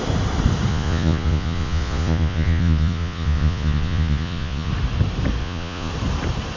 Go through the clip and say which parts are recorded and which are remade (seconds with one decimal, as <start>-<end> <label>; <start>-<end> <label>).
0.0-0.7 recorded; 0.7-4.7 remade; 4.7-5.4 recorded; 5.4-5.9 remade; 5.9-6.6 recorded